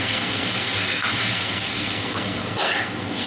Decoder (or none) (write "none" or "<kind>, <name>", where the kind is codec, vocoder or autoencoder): codec, SNAC